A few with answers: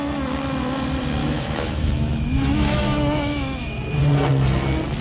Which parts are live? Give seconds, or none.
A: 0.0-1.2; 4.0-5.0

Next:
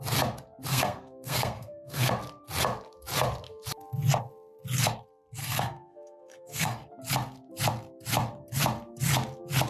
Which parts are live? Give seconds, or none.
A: 0.0-0.7; 2.1-5.4; 6.9-9.7

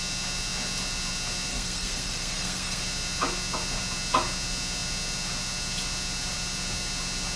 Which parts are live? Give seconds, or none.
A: 0.0-1.5; 2.8-7.4

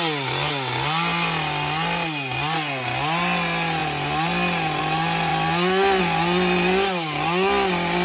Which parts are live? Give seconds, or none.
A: 0.0-8.0

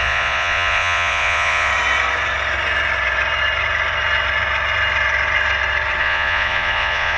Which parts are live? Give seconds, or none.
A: 1.7-6.0

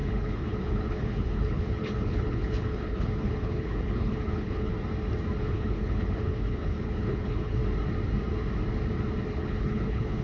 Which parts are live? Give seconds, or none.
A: 4.7-5.4; 7.6-9.3

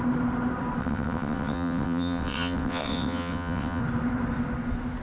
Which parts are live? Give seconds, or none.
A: 0.0-0.8; 3.8-5.0